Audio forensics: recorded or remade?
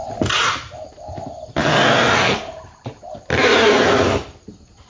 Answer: recorded